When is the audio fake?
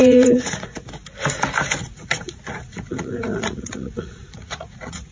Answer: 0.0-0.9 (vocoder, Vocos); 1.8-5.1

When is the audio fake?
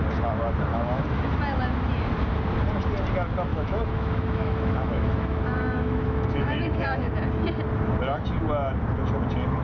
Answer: 0.7-1.4 (autoencoder, DAC-VAE); 3.5-7.1